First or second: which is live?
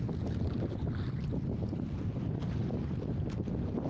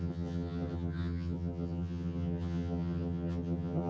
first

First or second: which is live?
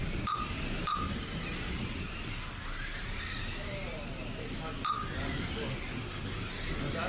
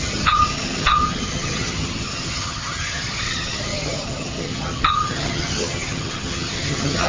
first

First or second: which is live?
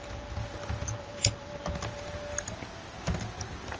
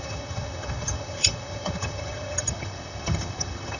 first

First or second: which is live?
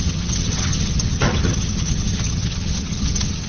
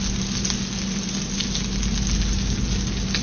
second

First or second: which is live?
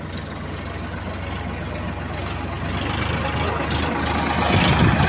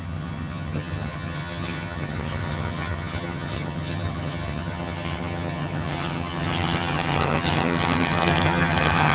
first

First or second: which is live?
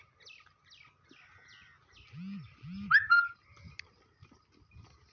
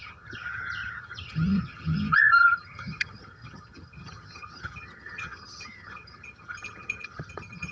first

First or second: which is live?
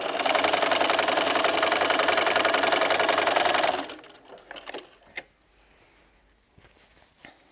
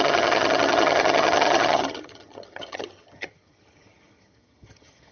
first